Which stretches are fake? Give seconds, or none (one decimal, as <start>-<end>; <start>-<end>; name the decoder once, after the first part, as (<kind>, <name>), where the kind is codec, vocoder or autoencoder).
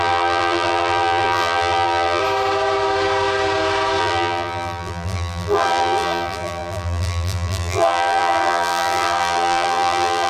0.0-2.2 (vocoder, BigVGAN v2); 4.0-10.3